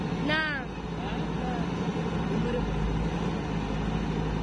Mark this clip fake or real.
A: real